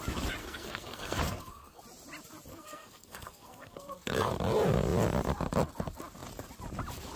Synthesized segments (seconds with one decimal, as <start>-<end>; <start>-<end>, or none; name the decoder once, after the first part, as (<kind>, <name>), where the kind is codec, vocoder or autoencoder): 0.4-1.8 (codec, SNAC); 2.5-4.3